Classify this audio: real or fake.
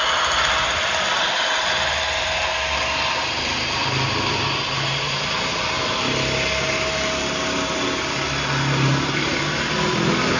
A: real